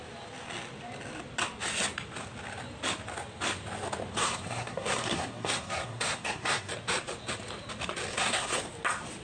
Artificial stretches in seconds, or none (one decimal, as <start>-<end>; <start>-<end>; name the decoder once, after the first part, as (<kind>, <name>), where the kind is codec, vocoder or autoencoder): 4.2-6.7 (codec, SNAC); 8.1-8.6